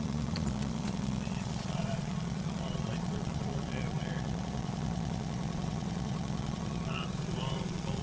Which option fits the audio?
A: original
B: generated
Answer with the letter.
B